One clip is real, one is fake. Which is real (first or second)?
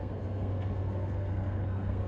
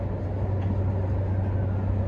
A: second